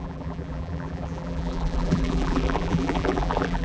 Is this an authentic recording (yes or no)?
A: no